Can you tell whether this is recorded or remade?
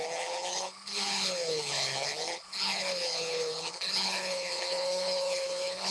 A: remade